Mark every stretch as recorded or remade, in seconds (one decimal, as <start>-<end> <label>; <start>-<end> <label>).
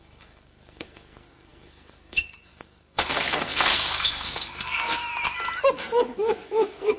0.0-5.0 remade; 5.0-5.7 recorded; 5.7-7.0 remade